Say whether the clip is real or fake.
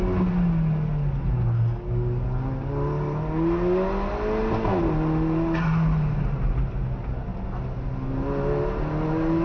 real